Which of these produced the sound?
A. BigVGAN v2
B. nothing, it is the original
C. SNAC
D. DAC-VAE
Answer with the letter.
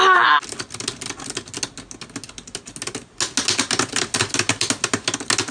B